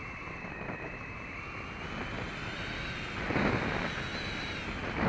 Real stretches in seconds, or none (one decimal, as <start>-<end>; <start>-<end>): 0.0-5.1